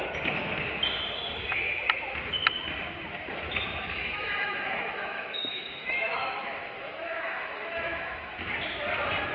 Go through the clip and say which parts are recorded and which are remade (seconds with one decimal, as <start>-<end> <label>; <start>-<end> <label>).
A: 0.0-3.8 recorded; 3.8-8.3 remade; 8.3-9.3 recorded